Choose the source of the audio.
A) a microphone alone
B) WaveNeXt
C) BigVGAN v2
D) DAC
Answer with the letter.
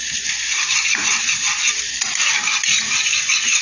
A